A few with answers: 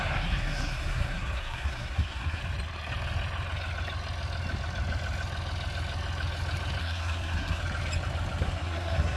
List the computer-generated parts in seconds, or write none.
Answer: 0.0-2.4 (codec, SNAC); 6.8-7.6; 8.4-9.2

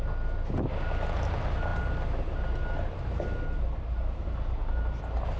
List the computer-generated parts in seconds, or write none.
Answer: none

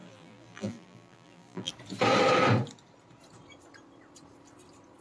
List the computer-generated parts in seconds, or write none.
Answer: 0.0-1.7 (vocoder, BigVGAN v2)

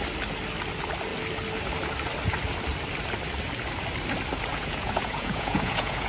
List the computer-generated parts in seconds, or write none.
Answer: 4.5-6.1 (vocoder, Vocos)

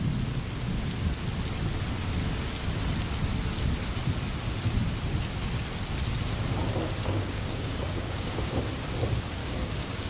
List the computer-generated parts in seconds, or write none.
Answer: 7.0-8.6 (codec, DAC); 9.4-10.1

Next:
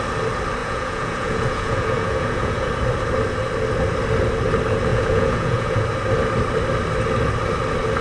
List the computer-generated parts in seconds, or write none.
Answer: 0.6-2.7 (vocoder, Vocos); 4.9-5.8